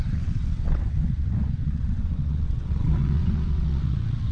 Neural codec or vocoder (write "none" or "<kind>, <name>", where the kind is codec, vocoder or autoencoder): vocoder, WaveNeXt